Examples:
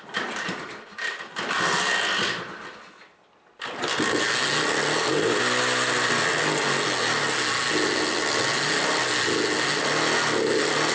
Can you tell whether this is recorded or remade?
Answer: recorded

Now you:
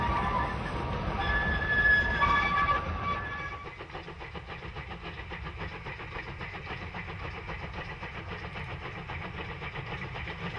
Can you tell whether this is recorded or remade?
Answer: recorded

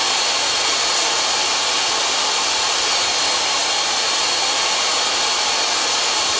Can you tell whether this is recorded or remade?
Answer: recorded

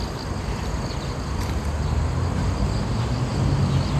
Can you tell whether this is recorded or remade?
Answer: recorded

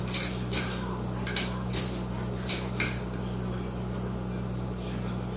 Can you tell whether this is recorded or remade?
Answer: recorded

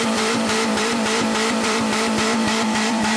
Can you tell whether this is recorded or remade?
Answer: remade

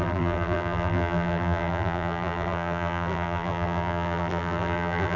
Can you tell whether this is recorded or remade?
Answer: remade